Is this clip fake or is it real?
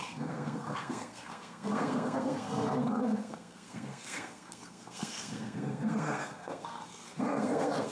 fake